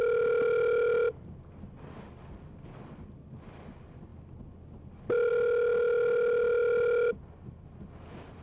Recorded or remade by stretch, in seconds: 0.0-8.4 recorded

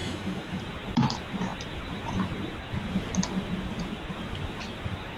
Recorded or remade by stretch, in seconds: 0.0-0.6 remade; 0.6-5.2 recorded

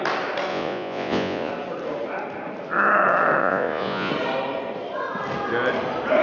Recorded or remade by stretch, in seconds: 0.0-0.5 recorded; 0.5-1.5 remade; 1.5-3.4 recorded; 3.4-4.1 remade; 4.1-6.2 recorded

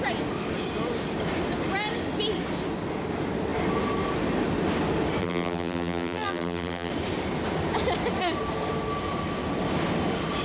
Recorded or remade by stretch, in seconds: 0.0-5.2 recorded; 5.2-6.9 remade; 6.9-10.4 recorded

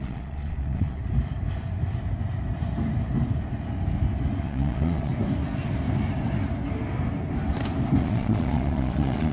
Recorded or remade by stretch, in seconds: 0.0-1.0 remade; 1.0-4.4 recorded; 4.4-5.1 remade; 5.1-8.0 recorded; 8.0-9.3 remade

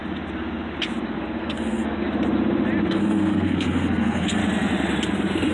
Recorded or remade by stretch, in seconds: 0.0-1.4 recorded; 1.4-2.0 remade; 2.0-2.9 recorded; 2.9-4.4 remade; 4.4-5.5 recorded